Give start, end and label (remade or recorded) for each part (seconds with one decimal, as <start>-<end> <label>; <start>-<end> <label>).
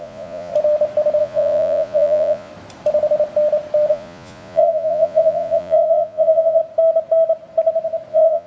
0.0-0.5 remade; 0.5-1.2 recorded; 1.2-2.5 remade; 2.5-3.9 recorded; 3.9-6.6 remade; 6.6-8.1 recorded; 8.1-8.5 remade